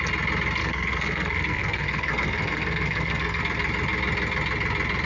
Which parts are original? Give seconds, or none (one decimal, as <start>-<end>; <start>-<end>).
0.0-0.6; 3.4-5.1